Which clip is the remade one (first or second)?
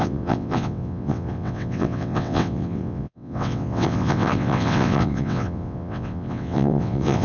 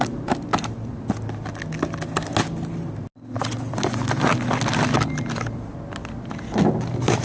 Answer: first